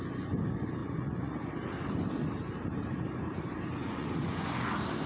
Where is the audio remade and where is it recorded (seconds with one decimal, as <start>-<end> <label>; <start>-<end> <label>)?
0.0-0.8 recorded; 0.8-1.5 remade; 1.5-3.8 recorded; 3.8-4.5 remade; 4.5-5.1 recorded